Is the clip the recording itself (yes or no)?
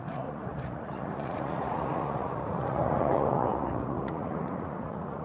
no